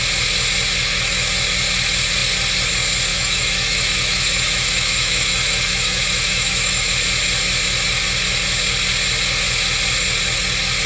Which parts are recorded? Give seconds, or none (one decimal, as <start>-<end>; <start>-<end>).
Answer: 0.0-3.1; 6.9-10.9